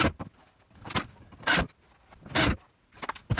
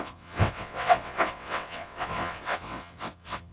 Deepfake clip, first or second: second